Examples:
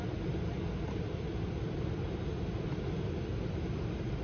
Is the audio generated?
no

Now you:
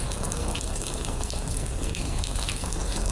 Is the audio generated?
yes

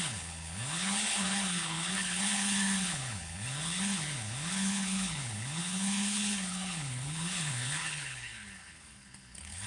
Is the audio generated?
yes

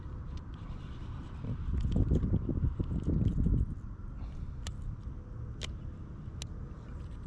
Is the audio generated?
no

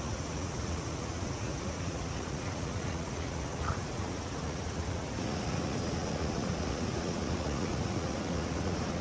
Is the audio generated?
yes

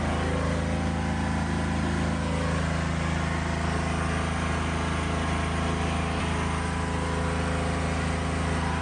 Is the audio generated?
no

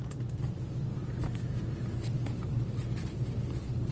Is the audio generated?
no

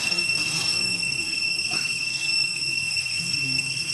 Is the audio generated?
yes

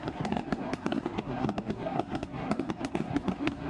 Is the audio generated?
yes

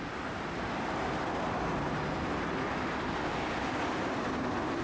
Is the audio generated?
no